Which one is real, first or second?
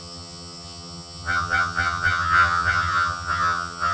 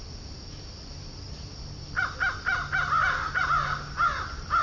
second